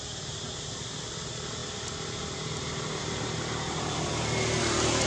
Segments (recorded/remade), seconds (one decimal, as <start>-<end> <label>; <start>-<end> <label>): 0.0-5.1 recorded